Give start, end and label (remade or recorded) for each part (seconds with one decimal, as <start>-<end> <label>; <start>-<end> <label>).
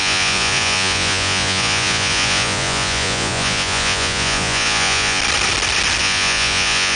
0.0-5.2 remade; 5.2-6.0 recorded; 6.0-7.0 remade